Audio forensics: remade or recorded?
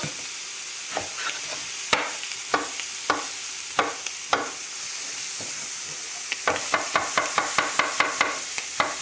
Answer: recorded